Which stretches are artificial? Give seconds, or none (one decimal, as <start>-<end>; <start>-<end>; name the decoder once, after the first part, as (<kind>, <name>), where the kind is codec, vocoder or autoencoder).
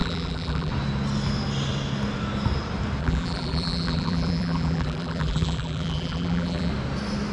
0.0-0.7 (vocoder, BigVGAN v2); 3.0-6.7